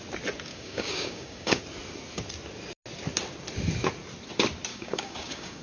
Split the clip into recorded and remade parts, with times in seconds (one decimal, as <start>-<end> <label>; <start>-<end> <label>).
0.0-0.5 recorded; 0.5-1.6 remade; 1.6-4.7 recorded; 4.7-5.6 remade